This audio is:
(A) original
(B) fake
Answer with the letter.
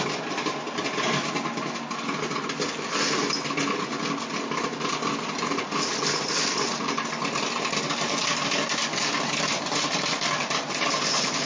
A